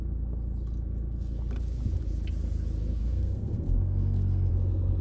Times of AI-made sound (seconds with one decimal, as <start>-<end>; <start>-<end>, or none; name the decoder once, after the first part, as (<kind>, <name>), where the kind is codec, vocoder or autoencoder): 3.0-4.5 (codec, SNAC)